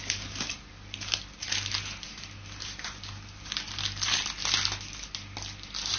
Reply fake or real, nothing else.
real